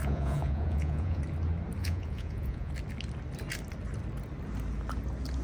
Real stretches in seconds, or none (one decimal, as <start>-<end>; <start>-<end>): 1.2-1.8; 2.7-5.4